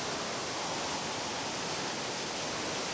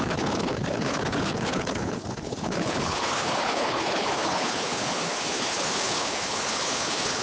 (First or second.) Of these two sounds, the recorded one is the first